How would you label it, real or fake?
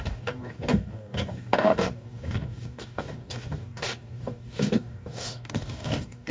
fake